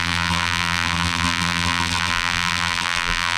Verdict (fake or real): fake